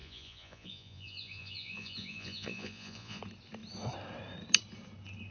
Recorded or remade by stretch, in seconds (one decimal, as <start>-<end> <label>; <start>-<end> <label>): 0.0-3.2 remade; 3.2-5.3 recorded